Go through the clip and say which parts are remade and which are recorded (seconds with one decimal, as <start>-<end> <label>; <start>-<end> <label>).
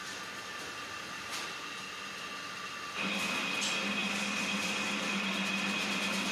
0.0-6.3 recorded